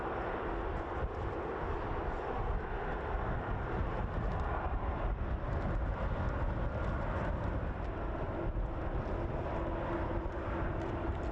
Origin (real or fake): real